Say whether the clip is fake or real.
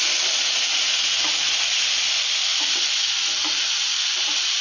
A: real